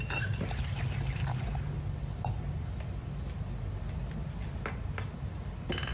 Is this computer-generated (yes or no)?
no